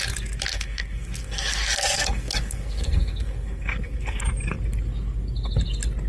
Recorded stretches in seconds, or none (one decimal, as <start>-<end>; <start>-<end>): 0.0-0.5; 4.2-6.1